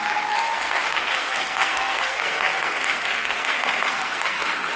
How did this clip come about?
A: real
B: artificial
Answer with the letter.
B